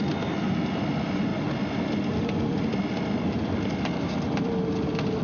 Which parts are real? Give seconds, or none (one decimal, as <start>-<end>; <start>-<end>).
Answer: 0.0-5.2